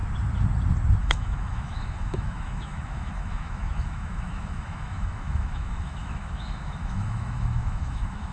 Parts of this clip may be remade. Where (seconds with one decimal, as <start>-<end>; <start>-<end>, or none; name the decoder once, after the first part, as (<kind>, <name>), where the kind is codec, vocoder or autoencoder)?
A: 1.0-8.3 (autoencoder, DAC-VAE)